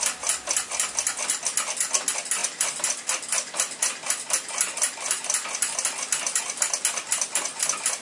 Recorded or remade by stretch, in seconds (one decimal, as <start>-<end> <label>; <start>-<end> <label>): 0.0-8.0 recorded